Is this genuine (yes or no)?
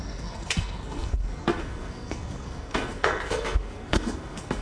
no